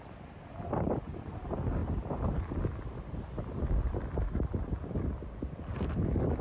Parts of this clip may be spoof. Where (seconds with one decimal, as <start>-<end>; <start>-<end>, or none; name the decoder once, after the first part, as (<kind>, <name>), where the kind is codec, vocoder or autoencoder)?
none